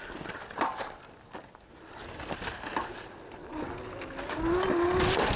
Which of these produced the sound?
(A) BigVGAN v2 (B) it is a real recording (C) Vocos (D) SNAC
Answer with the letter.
B